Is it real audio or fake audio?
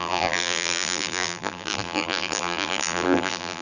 fake